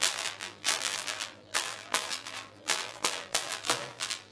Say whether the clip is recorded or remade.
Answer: remade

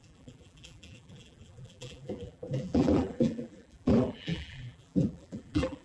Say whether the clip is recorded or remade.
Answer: remade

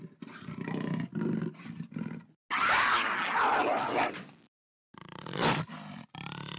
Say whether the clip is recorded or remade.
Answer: recorded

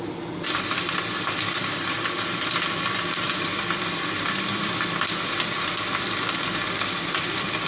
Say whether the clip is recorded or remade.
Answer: remade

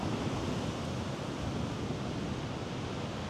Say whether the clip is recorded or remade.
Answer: recorded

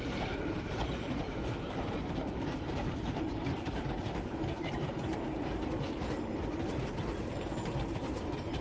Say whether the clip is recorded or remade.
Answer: remade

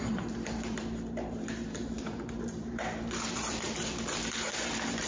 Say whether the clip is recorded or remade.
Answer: remade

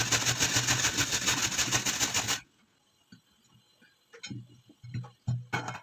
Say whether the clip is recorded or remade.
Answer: recorded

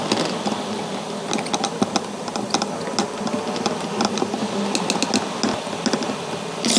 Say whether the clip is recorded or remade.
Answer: recorded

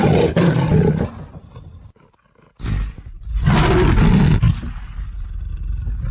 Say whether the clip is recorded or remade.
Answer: recorded